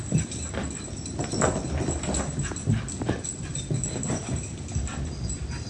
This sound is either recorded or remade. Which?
recorded